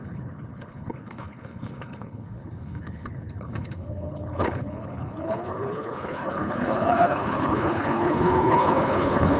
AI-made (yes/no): yes